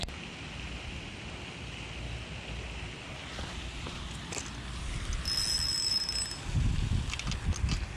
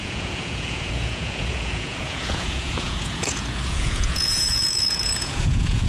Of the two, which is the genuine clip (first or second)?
first